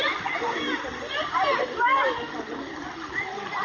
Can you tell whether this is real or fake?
real